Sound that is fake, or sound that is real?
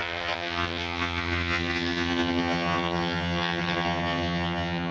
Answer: fake